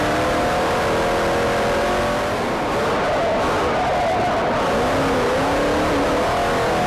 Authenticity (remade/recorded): recorded